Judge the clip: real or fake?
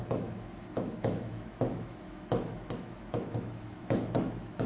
fake